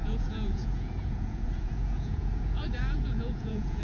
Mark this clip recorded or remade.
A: remade